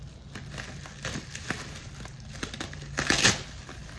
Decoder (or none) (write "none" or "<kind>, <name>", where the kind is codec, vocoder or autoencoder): none